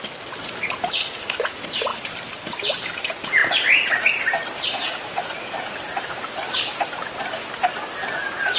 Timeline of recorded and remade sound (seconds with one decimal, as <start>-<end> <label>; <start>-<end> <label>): 0.0-1.9 recorded; 1.9-3.0 remade; 3.0-8.6 recorded